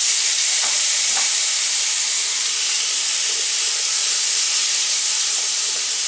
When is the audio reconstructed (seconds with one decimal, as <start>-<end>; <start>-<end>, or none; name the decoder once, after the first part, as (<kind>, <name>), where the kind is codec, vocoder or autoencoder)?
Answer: 0.0-4.0 (vocoder, BigVGAN v2); 4.8-6.1

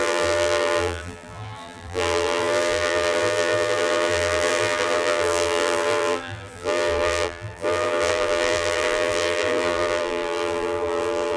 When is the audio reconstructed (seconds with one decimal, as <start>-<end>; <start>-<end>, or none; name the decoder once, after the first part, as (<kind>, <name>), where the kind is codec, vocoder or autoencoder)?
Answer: 0.0-11.4 (vocoder, BigVGAN v2)

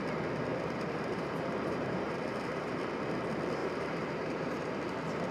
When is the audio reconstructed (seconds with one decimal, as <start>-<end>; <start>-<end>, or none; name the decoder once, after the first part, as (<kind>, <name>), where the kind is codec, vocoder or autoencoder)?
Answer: 0.5-2.8 (vocoder, BigVGAN v2); 3.6-4.7

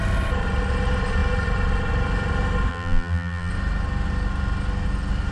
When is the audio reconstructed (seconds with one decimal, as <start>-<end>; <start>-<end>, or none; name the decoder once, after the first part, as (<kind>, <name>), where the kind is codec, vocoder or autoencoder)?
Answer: 2.7-3.5 (vocoder, BigVGAN v2)

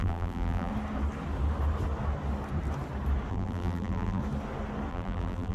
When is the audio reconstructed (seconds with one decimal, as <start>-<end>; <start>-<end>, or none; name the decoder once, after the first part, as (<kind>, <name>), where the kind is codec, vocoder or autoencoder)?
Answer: 0.0-0.7 (vocoder, BigVGAN v2); 3.3-4.2; 4.9-5.5

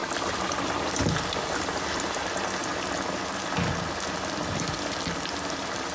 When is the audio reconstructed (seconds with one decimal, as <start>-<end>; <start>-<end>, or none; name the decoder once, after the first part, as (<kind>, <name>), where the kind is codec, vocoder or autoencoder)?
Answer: none